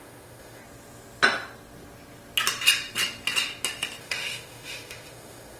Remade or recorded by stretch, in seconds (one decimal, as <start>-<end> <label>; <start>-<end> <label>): 0.0-0.6 remade; 0.6-4.0 recorded; 4.0-5.6 remade